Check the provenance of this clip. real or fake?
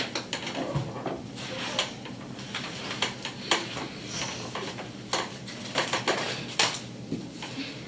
real